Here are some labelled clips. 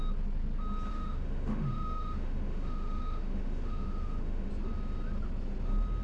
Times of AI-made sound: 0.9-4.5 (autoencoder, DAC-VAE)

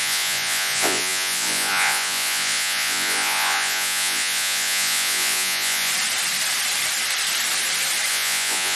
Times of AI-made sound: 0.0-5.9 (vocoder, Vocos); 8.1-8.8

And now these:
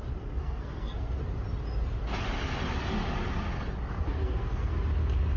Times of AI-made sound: 0.4-1.2 (codec, SNAC); 4.1-4.7

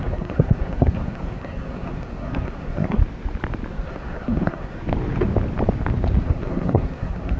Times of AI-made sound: 0.0-3.0 (codec, SNAC); 3.7-4.8; 6.2-7.4